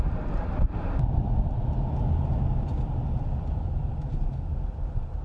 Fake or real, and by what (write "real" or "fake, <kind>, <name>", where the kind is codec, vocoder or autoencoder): real